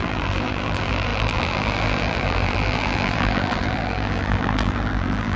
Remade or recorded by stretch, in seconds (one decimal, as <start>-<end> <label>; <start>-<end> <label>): 0.0-5.4 remade